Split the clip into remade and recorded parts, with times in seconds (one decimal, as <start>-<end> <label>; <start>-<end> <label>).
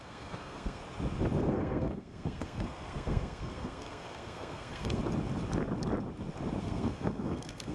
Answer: 0.0-0.8 remade; 0.8-1.4 recorded; 1.4-5.0 remade; 5.0-6.6 recorded; 6.6-7.7 remade